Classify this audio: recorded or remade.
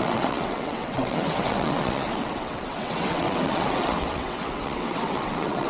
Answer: remade